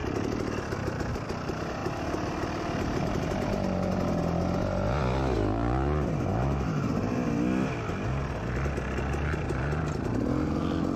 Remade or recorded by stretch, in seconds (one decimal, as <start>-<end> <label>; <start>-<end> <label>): 0.0-6.3 recorded; 6.3-6.9 remade; 6.9-11.0 recorded